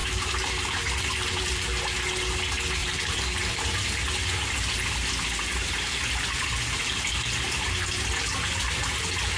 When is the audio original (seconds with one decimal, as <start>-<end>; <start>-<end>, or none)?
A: 1.9-2.8; 3.6-9.4